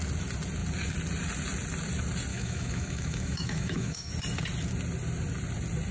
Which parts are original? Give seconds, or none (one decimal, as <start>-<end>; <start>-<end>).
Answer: 0.0-2.3; 4.1-5.9